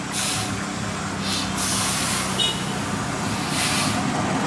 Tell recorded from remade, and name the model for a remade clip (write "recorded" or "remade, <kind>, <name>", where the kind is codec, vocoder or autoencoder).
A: recorded